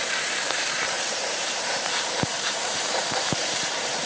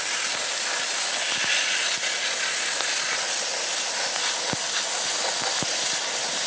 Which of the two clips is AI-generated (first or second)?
first